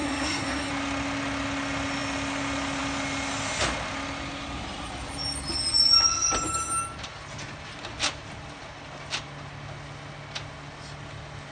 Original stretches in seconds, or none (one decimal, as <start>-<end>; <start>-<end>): 0.7-11.5